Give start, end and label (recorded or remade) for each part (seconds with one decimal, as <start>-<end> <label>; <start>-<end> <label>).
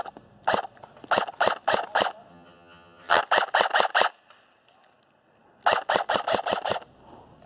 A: 0.0-2.3 recorded; 2.3-3.2 remade; 3.2-7.5 recorded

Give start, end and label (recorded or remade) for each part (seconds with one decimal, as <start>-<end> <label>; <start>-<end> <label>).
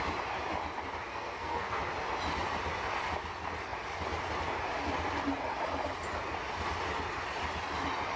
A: 0.0-1.1 recorded; 1.1-1.8 remade; 1.8-8.2 recorded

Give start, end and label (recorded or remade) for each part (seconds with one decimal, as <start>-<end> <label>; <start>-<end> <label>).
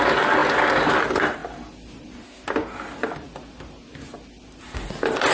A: 0.0-5.3 recorded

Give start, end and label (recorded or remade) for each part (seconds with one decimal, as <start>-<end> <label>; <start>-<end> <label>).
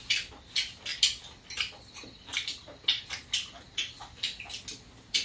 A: 0.0-5.2 recorded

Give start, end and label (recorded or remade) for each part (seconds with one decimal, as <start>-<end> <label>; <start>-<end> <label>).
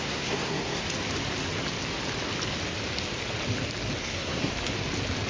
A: 0.0-0.8 remade; 0.8-4.0 recorded; 4.0-4.5 remade; 4.5-5.3 recorded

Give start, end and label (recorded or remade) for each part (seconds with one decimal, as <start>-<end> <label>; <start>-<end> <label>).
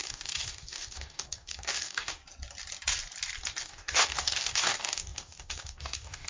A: 0.0-2.2 remade; 2.2-3.6 recorded; 3.6-6.3 remade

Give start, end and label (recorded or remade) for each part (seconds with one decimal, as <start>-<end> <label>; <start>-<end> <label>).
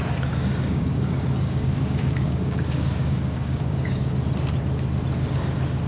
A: 0.0-0.6 recorded; 0.6-4.1 remade; 4.1-5.9 recorded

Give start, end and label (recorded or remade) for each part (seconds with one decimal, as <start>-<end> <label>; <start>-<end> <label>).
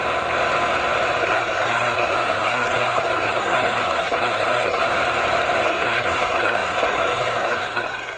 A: 0.0-1.2 recorded; 1.2-4.9 remade; 4.9-5.6 recorded; 5.6-8.2 remade